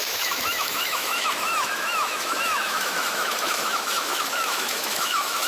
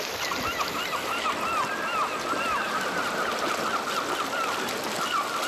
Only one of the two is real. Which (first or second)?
second